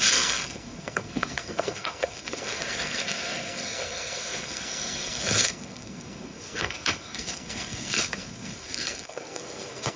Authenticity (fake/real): fake